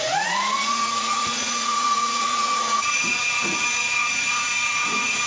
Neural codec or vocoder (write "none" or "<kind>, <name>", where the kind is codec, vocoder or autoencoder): vocoder, Vocos